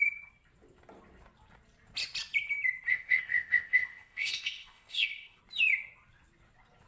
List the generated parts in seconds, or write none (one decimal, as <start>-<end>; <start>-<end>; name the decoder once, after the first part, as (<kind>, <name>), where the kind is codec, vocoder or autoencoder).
2.9-5.4 (codec, ZipCodec)